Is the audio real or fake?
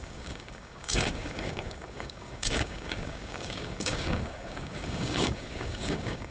fake